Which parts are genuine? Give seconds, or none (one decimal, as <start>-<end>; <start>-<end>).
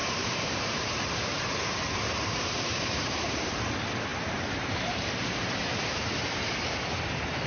3.6-4.1